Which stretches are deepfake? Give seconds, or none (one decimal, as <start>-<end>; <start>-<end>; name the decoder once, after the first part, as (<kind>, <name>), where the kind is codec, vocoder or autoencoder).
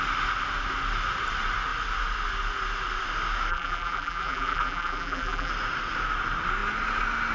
3.5-5.5 (vocoder, BigVGAN v2)